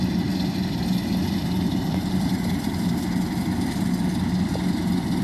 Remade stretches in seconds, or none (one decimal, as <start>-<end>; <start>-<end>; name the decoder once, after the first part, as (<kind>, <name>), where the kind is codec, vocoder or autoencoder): 1.4-2.9 (vocoder, BigVGAN v2)